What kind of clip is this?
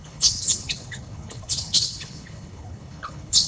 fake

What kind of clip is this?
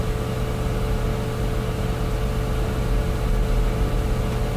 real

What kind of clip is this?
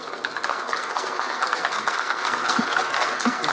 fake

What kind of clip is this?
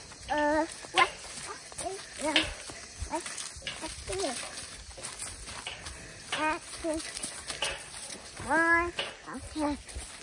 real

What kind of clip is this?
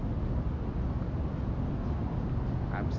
real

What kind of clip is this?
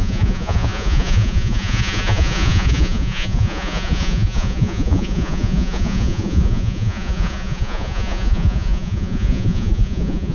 fake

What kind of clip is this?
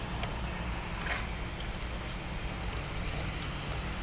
real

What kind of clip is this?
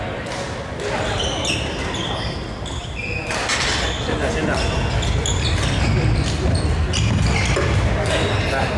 real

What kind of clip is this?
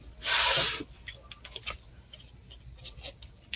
real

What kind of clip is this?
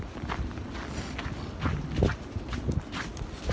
real